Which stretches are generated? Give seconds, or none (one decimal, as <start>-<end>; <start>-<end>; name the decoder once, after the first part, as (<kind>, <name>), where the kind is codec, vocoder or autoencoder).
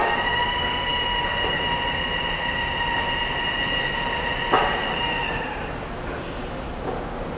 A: 4.6-5.5 (vocoder, BigVGAN v2)